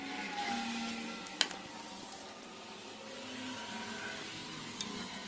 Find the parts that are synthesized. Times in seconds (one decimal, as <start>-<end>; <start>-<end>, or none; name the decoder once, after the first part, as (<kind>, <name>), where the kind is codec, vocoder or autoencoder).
none